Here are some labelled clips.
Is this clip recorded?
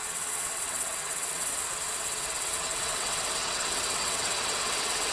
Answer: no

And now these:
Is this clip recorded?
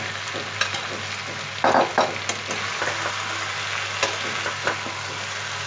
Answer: yes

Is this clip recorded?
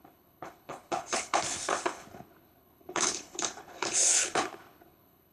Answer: no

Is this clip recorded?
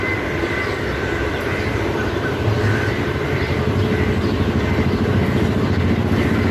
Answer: yes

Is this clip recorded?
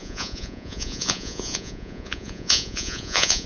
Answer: no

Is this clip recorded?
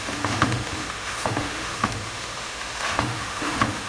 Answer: no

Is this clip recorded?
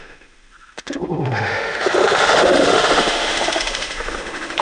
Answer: no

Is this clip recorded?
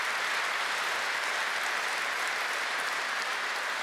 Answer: yes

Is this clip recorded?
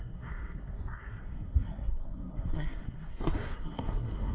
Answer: no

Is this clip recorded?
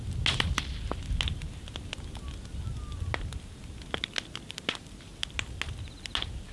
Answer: yes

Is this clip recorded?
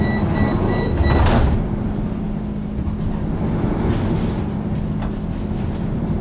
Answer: yes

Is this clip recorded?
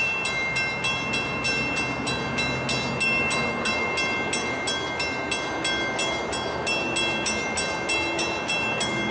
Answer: yes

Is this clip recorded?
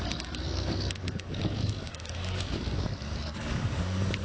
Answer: no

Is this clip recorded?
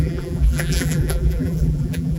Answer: no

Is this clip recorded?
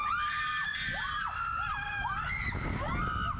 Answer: yes